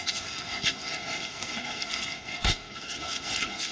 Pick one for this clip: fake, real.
fake